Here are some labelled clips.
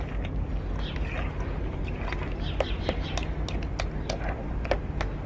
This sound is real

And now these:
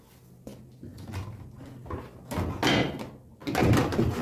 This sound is real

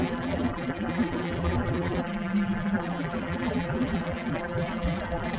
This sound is fake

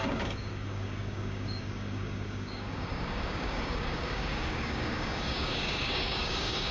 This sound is fake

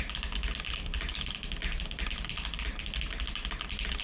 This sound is real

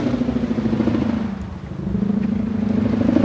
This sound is real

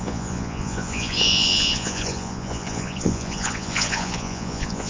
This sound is fake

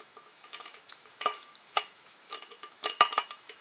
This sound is fake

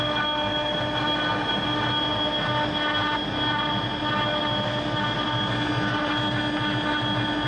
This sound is real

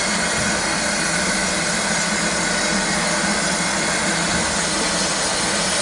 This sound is real